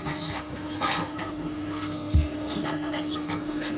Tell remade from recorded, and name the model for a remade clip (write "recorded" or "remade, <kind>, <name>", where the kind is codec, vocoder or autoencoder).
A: remade, codec, SNAC